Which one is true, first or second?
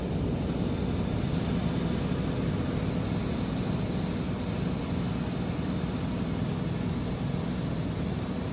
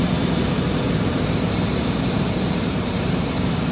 first